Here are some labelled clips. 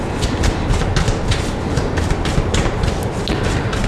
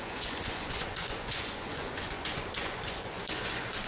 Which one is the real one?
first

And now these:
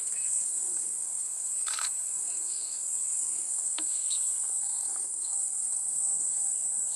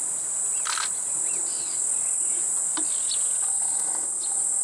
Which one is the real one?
second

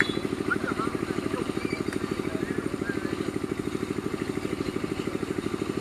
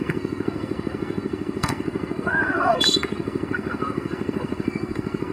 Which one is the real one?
first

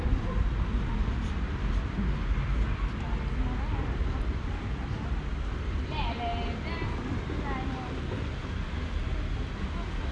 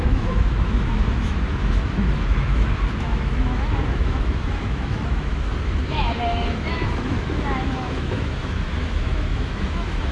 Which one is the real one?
first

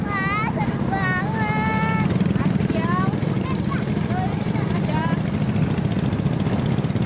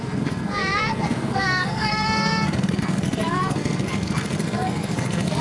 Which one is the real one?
first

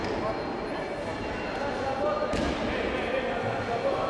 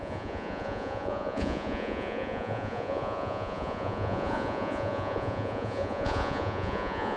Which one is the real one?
first